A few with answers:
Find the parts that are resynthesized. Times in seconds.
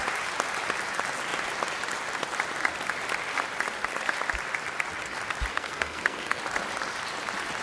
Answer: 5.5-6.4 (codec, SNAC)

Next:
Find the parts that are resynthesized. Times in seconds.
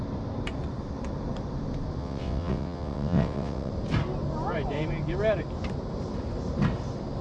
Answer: 2.0-3.7 (vocoder, WaveNeXt)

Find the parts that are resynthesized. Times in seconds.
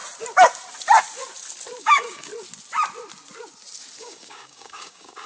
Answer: 1.8-2.3 (codec, DAC); 4.0-5.3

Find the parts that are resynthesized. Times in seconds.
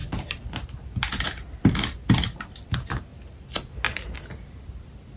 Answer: 0.0-3.1 (vocoder, BigVGAN v2); 4.0-5.2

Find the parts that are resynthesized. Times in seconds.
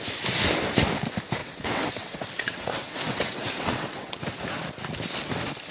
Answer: 1.4-4.4 (vocoder, WaveNeXt)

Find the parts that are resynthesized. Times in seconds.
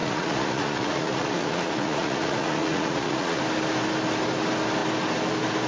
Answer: 0.0-3.4 (vocoder, Vocos)